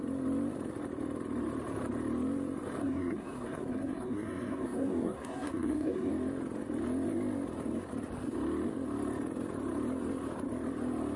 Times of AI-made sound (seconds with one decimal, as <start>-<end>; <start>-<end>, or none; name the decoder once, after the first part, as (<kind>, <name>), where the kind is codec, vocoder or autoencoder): 2.8-6.1 (codec, SNAC)